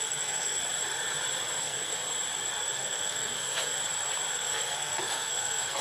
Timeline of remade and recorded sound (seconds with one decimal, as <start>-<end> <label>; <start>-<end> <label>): 0.0-0.6 remade; 0.6-1.6 recorded; 1.6-2.0 remade; 2.0-2.6 recorded; 2.6-3.8 remade; 3.8-4.3 recorded; 4.3-5.8 remade